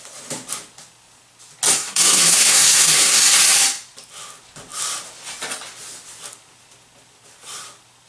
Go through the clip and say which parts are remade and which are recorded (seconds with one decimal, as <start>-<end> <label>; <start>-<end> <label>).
0.0-1.7 recorded; 1.7-3.2 remade; 3.2-8.1 recorded